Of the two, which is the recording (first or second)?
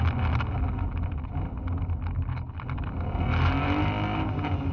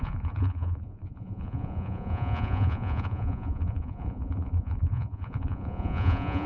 first